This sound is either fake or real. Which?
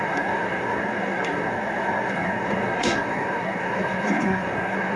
fake